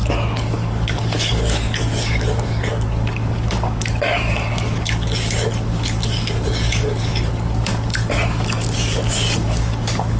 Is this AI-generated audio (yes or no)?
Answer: yes